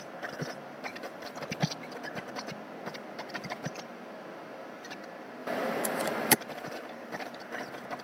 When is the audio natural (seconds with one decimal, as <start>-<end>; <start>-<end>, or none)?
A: 0.0-0.9; 1.7-5.4; 7.4-8.0